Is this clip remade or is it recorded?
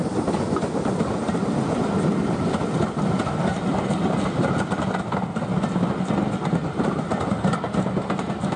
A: recorded